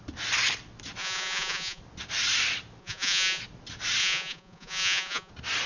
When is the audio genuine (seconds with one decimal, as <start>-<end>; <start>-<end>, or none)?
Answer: 0.0-1.0; 1.8-2.8; 3.4-4.0; 5.3-5.7